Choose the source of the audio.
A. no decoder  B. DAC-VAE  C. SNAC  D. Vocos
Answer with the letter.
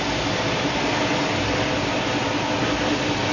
A